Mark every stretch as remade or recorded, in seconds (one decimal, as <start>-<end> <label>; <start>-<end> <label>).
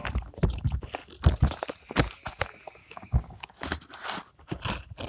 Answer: 0.0-2.8 recorded; 2.8-3.5 remade; 3.5-5.1 recorded